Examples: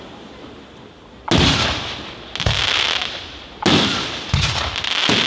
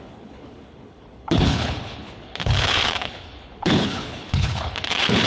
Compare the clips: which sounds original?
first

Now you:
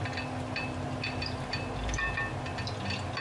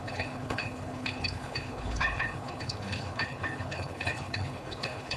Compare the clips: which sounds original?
first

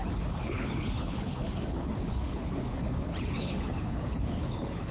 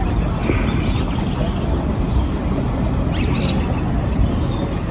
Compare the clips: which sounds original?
second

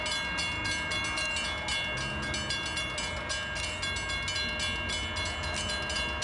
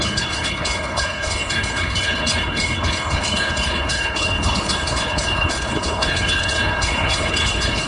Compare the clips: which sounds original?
first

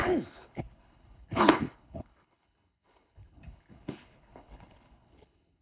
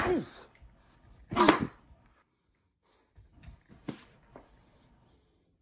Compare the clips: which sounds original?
second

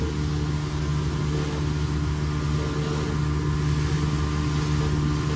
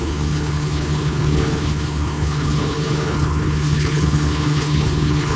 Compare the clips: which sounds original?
first